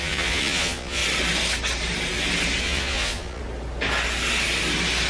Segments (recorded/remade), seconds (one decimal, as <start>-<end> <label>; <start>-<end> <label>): 0.0-1.0 remade; 1.0-2.6 recorded; 2.6-3.4 remade; 3.4-5.1 recorded